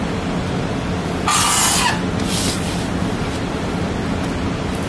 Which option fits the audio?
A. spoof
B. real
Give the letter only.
B